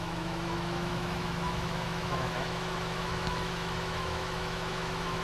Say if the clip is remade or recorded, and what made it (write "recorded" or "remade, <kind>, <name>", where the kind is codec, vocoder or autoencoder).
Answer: remade, autoencoder, DAC-VAE